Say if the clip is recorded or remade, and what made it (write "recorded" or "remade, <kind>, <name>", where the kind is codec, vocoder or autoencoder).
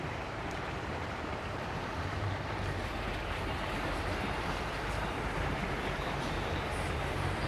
remade, vocoder, BigVGAN v2